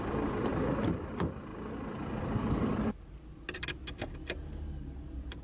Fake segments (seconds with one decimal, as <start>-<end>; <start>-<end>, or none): none